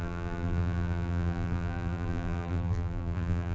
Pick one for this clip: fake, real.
fake